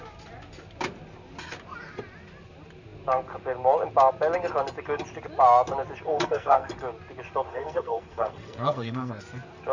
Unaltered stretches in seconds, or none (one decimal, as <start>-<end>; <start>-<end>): 0.0-6.1; 6.7-7.5; 9.2-9.7